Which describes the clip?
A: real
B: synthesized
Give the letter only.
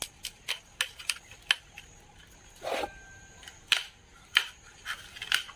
A